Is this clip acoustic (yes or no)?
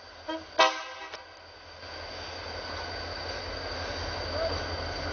yes